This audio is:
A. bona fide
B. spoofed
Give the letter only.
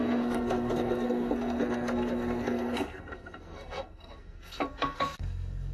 B